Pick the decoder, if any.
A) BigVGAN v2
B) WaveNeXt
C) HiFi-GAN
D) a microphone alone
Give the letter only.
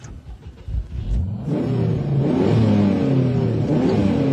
D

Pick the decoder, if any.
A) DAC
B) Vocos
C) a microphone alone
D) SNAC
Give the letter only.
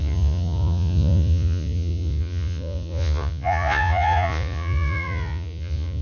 B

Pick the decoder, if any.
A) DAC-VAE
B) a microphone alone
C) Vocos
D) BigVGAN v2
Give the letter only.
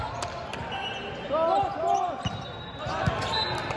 B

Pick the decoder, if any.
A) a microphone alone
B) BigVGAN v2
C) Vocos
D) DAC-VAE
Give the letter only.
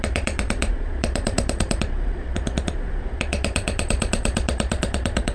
C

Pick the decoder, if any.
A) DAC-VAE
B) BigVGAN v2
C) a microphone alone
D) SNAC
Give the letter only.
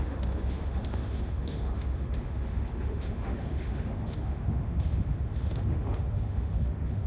A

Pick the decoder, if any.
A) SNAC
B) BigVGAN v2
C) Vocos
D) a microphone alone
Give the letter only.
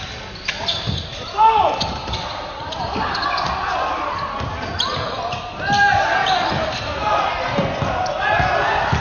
D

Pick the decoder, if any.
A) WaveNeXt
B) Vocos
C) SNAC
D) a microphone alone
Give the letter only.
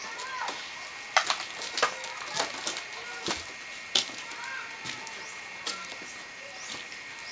D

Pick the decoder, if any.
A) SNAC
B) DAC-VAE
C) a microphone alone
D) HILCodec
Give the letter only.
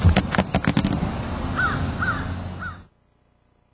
C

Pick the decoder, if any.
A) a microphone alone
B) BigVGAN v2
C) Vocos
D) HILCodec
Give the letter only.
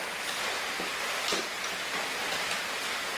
A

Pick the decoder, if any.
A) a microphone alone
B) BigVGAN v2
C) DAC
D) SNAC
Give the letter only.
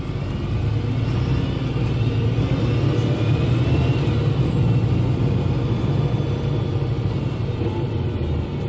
A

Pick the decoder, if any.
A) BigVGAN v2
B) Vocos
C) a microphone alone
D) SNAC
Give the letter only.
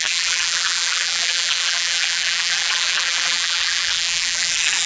A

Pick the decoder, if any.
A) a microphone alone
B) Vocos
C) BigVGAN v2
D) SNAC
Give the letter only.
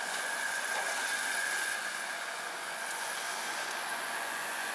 B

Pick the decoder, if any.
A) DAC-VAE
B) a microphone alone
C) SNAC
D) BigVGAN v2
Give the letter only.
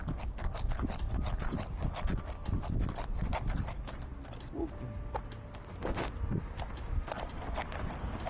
B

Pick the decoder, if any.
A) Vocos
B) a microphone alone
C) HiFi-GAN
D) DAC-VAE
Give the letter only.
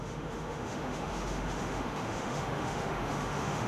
D